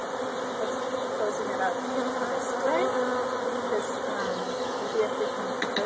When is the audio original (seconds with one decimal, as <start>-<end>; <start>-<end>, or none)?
0.0-4.2; 5.0-5.9